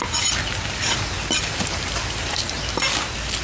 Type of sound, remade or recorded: recorded